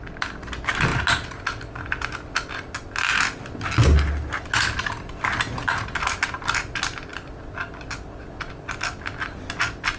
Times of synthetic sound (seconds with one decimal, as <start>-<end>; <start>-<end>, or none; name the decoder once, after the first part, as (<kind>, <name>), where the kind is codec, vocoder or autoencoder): none